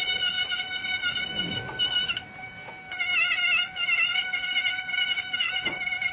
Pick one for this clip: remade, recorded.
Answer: recorded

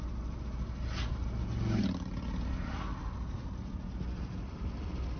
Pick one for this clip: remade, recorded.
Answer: recorded